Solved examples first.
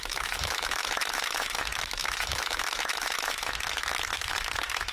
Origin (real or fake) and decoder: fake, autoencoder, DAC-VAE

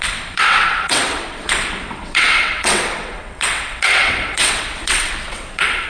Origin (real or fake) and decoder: fake, vocoder, WaveNeXt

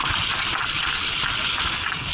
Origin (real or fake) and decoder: real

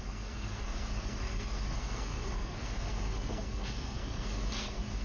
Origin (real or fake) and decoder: fake, codec, SNAC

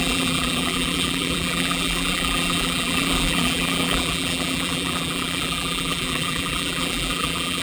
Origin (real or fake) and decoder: fake, vocoder, BigVGAN v2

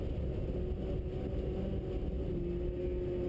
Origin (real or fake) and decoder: real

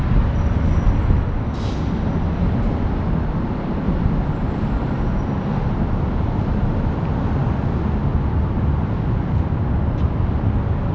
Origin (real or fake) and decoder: real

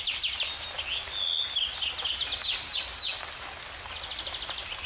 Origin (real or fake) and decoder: real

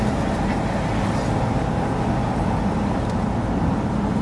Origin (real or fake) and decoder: real